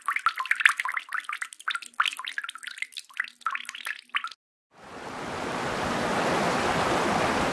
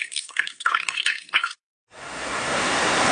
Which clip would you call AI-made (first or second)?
second